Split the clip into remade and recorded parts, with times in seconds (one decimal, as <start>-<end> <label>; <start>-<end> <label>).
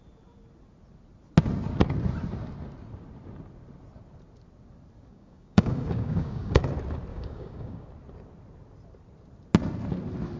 0.0-5.1 recorded; 5.1-6.6 remade; 6.6-7.1 recorded; 7.1-7.9 remade; 7.9-10.4 recorded